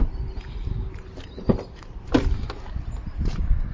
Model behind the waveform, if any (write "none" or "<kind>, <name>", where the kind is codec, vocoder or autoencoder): none